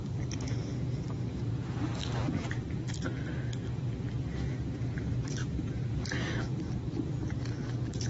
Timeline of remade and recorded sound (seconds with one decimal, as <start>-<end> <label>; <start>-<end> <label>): 0.0-8.1 remade